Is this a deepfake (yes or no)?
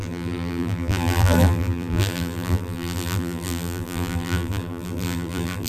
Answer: yes